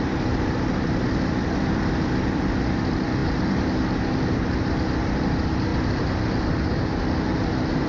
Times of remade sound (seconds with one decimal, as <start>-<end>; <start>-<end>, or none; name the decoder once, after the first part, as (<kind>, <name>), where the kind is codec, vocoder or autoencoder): none